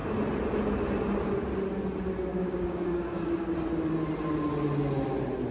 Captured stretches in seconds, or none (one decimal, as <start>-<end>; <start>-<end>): 0.0-2.3; 3.3-5.5